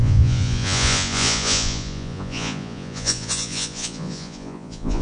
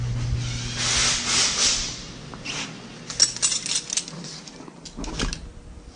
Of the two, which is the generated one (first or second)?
first